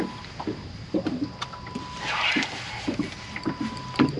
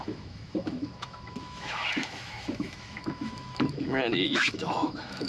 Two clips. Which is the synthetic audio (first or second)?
second